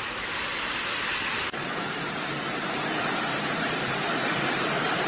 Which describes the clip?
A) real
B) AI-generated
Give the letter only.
B